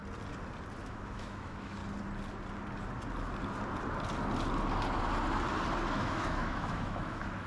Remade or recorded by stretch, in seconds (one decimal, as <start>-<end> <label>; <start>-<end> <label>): 0.0-0.8 recorded; 0.8-1.8 remade; 1.8-5.9 recorded; 5.9-7.5 remade